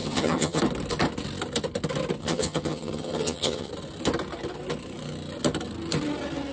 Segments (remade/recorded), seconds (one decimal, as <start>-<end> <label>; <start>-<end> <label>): 0.0-0.6 remade; 0.6-2.2 recorded; 2.2-3.7 remade; 3.7-6.5 recorded